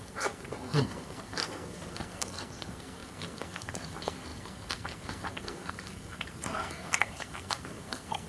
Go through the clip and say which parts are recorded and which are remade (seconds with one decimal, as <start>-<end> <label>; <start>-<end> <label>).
0.0-8.3 remade